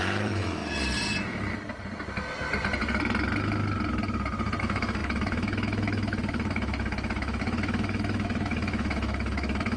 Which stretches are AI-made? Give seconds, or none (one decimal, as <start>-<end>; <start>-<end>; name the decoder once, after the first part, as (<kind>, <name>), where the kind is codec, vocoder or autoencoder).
0.0-0.6 (autoencoder, DAC-VAE); 4.6-9.8